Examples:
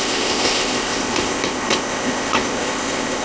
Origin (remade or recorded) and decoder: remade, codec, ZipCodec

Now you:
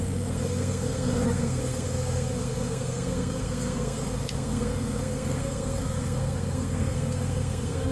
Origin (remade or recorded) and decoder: remade, codec, SNAC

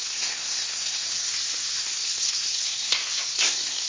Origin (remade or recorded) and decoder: remade, codec, SNAC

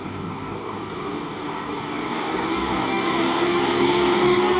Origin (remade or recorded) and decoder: remade, codec, DAC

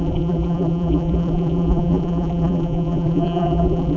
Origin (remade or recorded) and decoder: remade, vocoder, BigVGAN v2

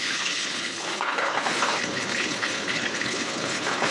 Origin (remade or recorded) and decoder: remade, codec, HILCodec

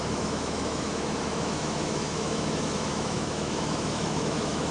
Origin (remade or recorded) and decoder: remade, autoencoder, DAC-VAE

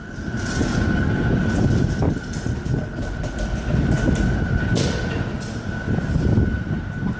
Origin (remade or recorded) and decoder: recorded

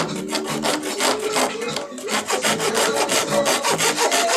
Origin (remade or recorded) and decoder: recorded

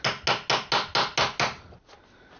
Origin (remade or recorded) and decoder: recorded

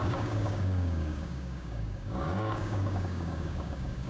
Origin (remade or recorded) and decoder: remade, codec, DAC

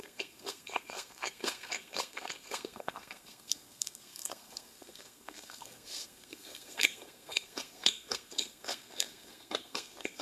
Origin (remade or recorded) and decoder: remade, codec, SNAC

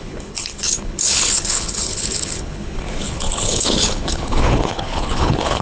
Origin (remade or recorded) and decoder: remade, codec, HILCodec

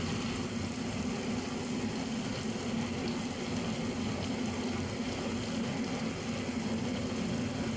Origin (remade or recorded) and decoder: recorded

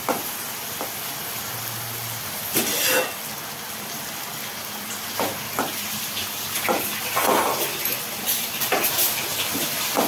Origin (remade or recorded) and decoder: recorded